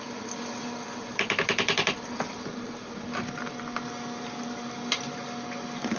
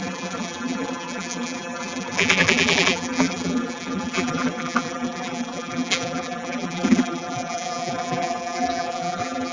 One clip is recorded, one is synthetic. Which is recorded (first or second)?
first